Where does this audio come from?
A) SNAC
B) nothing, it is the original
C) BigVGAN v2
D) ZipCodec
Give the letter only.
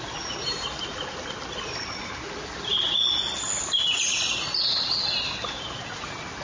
B